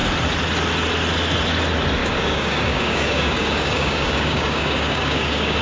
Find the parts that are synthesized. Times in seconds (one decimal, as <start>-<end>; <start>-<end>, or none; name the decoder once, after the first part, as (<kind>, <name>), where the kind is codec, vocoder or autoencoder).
2.0-5.6 (codec, DAC)